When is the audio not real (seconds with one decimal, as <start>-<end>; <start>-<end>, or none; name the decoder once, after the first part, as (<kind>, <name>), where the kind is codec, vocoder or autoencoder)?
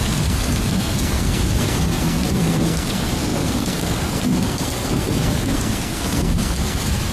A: 0.0-7.1 (codec, SNAC)